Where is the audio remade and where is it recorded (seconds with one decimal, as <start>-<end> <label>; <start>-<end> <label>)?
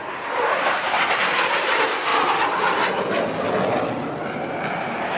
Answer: 0.0-5.2 recorded